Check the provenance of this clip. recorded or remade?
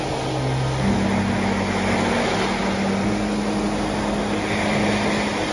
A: recorded